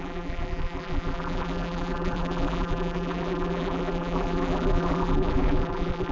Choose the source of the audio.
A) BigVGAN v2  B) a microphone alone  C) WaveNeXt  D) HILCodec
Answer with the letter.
A